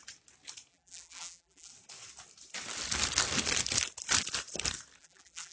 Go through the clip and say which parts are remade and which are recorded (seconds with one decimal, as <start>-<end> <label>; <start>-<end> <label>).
0.0-0.7 recorded; 0.7-1.7 remade; 1.7-5.0 recorded; 5.0-5.5 remade